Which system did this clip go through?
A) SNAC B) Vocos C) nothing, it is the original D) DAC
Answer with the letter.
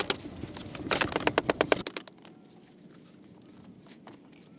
C